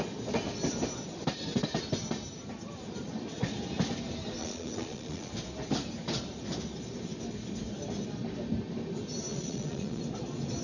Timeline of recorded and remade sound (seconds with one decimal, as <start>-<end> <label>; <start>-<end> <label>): 0.0-4.4 recorded; 4.4-5.3 remade; 5.3-9.3 recorded; 9.3-10.0 remade; 10.0-10.6 recorded